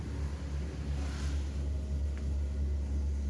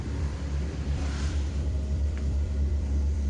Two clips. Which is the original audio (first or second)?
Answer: first